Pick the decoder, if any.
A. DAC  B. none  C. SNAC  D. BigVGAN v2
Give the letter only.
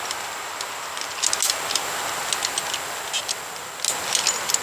B